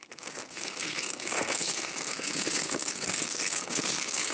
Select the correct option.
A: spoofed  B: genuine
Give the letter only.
A